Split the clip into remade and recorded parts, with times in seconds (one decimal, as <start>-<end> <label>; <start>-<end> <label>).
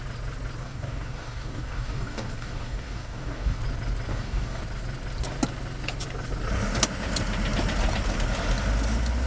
0.0-0.6 recorded; 0.6-3.6 remade; 3.6-4.1 recorded; 4.1-4.6 remade; 4.6-9.3 recorded